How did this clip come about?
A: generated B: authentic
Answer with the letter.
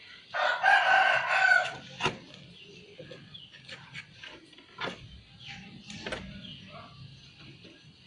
B